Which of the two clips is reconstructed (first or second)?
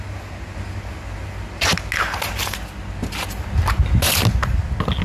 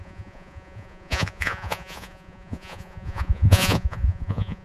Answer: second